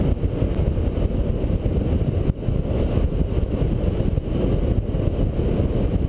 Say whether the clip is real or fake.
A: real